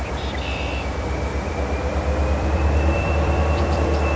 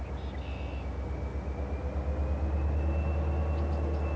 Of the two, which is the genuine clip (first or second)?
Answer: second